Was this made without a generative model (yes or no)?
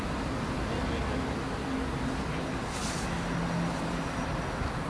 yes